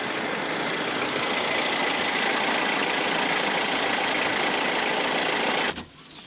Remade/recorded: recorded